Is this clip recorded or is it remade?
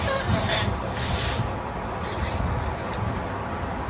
recorded